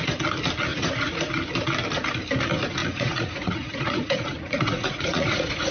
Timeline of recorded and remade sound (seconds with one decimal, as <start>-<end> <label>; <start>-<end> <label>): 0.0-0.7 recorded; 0.7-1.3 remade; 1.3-2.8 recorded; 2.8-5.7 remade